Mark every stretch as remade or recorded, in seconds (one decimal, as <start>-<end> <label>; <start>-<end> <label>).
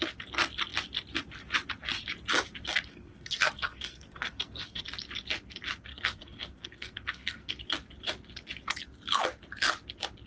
0.0-2.9 recorded; 2.9-4.8 remade; 4.8-5.9 recorded; 5.9-7.5 remade; 7.5-10.3 recorded